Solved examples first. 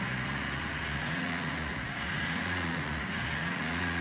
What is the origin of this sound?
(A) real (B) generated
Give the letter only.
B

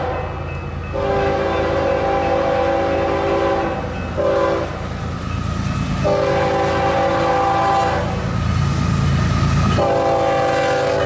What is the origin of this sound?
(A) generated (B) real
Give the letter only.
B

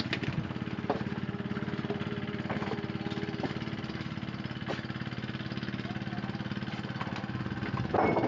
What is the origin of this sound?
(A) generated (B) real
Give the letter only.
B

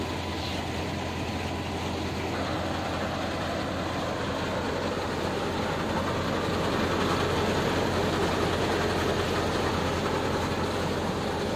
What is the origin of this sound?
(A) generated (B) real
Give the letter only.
B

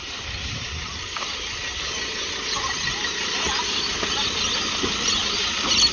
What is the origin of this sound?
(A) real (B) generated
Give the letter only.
A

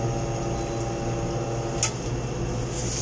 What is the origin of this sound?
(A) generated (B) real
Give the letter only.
B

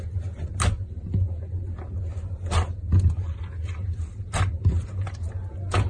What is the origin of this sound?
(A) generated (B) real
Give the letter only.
B